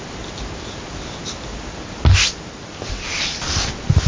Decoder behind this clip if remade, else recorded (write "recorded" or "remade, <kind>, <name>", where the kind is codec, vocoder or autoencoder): recorded